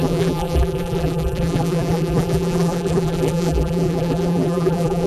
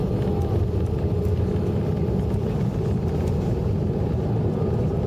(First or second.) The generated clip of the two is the first